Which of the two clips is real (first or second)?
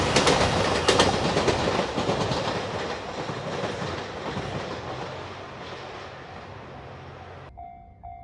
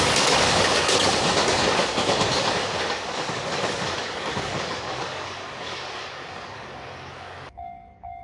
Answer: first